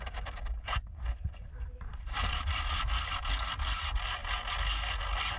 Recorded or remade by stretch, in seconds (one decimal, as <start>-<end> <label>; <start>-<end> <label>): 0.0-1.9 recorded; 1.9-3.2 remade; 3.2-5.4 recorded